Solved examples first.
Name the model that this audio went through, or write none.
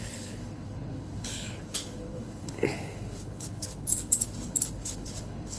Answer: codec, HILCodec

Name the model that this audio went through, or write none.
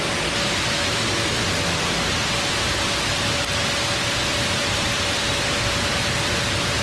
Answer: none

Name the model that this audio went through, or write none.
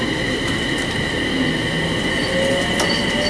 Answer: none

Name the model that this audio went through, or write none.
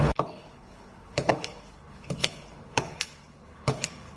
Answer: codec, HILCodec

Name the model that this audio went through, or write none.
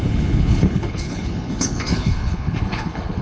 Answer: codec, HILCodec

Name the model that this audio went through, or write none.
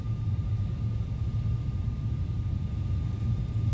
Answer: none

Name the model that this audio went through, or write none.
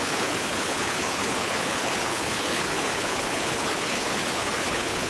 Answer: codec, HILCodec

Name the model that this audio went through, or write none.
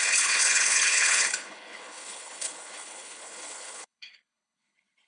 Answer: codec, HILCodec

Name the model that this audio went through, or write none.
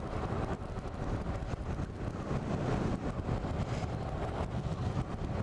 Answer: none